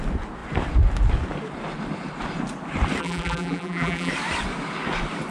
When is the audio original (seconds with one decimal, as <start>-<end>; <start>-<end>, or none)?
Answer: 0.0-3.0; 4.1-5.3